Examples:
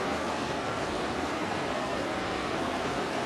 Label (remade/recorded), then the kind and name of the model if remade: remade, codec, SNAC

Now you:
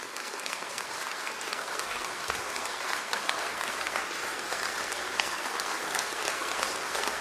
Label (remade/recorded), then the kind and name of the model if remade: remade, codec, SNAC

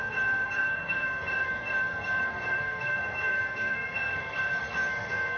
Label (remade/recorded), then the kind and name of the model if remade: remade, codec, SNAC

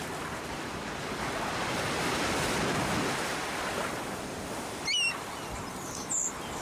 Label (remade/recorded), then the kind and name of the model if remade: recorded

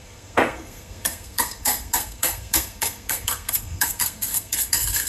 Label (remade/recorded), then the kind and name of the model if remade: remade, codec, SNAC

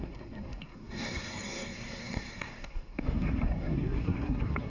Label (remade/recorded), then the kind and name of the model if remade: remade, codec, SNAC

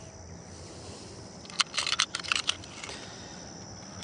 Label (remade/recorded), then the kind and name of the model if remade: recorded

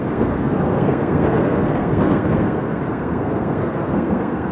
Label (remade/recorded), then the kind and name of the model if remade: remade, codec, SNAC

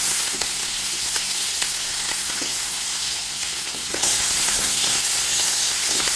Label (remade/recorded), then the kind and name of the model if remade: remade, codec, SNAC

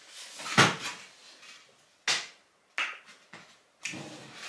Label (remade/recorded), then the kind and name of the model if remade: recorded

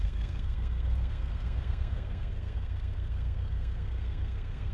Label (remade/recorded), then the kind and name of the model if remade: remade, codec, SNAC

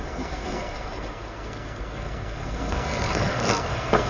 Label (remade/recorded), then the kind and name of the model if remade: remade, codec, SNAC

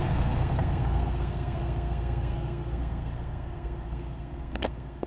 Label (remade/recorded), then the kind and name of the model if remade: remade, codec, SNAC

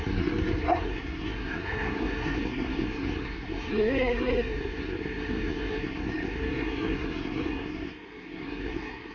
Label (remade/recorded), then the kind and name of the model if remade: remade, codec, SNAC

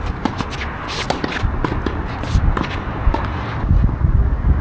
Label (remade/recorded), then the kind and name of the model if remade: recorded